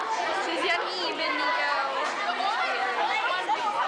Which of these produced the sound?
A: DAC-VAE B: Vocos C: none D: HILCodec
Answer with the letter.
C